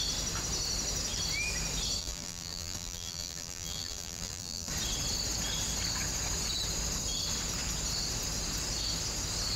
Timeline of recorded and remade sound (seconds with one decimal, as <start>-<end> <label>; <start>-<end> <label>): 0.0-2.0 recorded; 2.0-4.7 remade; 4.7-9.6 recorded